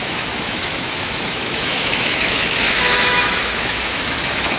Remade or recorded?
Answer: remade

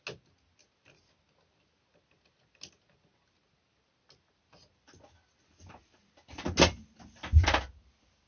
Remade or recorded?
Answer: recorded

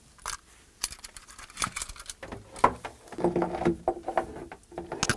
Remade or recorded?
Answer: recorded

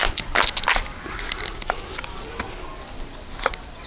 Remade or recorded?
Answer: recorded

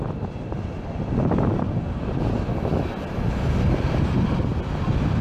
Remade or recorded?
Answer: recorded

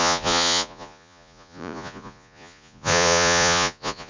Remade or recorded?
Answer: remade